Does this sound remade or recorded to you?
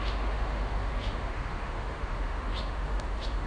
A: remade